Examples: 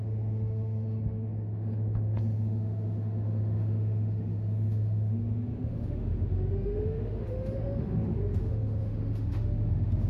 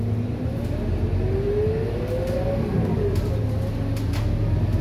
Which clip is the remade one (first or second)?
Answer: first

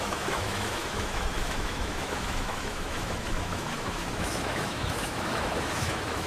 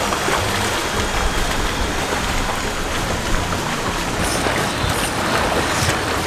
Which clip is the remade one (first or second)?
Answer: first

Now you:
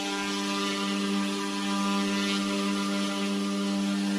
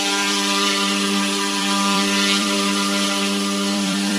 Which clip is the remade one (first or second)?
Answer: second